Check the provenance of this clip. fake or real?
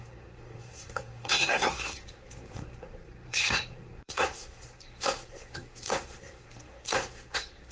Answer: fake